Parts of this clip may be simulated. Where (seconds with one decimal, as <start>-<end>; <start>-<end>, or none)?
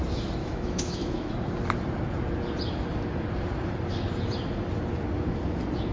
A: 0.4-1.3